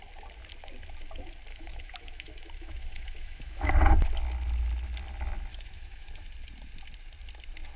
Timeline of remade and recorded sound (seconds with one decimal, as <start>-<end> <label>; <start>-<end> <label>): 0.0-1.5 recorded; 1.5-3.7 remade; 3.7-5.5 recorded; 5.5-6.1 remade; 6.1-7.8 recorded

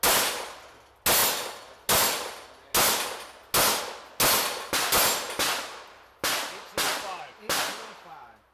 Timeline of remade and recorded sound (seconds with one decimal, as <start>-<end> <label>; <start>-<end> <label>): 0.0-8.5 recorded

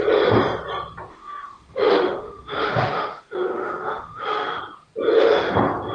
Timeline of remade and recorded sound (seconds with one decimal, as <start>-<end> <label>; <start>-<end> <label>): 0.0-1.1 recorded; 1.1-4.6 remade; 4.6-5.9 recorded

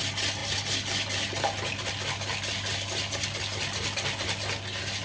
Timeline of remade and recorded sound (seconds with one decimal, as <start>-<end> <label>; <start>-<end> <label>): 0.0-5.0 recorded

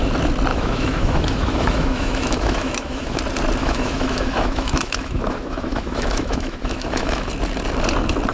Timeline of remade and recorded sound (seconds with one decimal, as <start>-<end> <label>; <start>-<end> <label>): 0.0-0.5 recorded; 0.5-3.2 remade; 3.2-3.6 recorded; 3.6-7.3 remade; 7.3-8.3 recorded

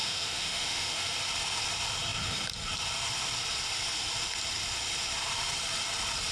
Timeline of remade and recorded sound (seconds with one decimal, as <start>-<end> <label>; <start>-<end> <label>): 0.0-1.0 remade; 1.0-6.3 recorded

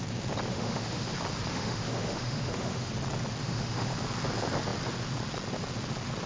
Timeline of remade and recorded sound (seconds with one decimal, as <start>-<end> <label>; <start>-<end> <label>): 0.0-0.5 recorded; 0.5-1.1 remade; 1.1-1.5 recorded; 1.5-2.9 remade; 2.9-3.4 recorded; 3.4-3.9 remade; 3.9-6.3 recorded

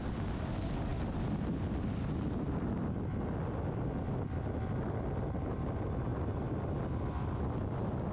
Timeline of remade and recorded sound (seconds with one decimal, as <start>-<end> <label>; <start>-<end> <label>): 0.0-8.1 recorded